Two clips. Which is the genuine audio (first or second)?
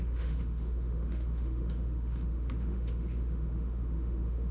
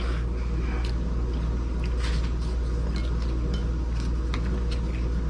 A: second